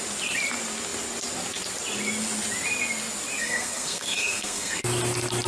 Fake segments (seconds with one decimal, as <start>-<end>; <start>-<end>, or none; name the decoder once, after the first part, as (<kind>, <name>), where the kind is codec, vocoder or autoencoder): 3.4-4.8 (codec, SNAC)